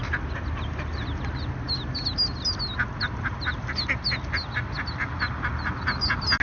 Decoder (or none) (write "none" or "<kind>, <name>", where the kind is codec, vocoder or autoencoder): none